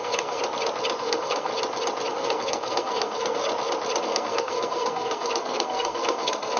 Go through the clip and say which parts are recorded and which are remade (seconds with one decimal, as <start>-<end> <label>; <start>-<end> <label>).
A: 0.0-0.4 remade; 0.4-1.0 recorded; 1.0-1.5 remade; 1.5-2.1 recorded; 2.1-3.4 remade; 3.4-4.0 recorded; 4.0-6.6 remade